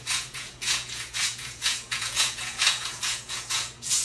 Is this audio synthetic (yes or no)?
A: yes